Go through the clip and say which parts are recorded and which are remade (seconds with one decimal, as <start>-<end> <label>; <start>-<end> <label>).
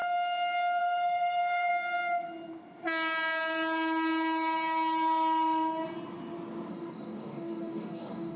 0.0-0.8 recorded; 0.8-1.7 remade; 1.7-6.7 recorded; 6.7-8.4 remade